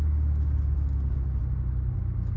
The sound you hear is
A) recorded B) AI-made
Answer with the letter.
A